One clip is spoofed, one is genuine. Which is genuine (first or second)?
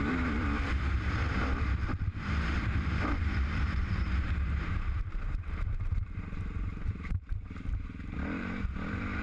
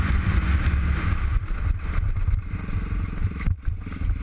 second